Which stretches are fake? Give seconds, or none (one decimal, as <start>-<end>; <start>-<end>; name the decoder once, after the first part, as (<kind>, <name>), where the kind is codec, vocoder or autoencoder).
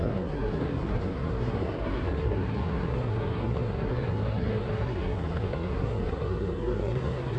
0.0-7.4 (codec, SNAC)